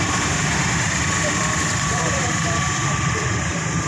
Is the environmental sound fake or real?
fake